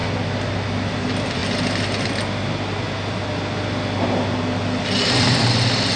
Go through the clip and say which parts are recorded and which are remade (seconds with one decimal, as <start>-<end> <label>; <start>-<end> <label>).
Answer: 0.0-6.0 recorded